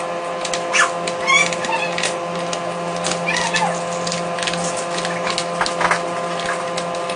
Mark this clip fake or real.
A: real